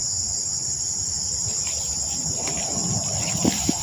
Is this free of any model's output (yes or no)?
yes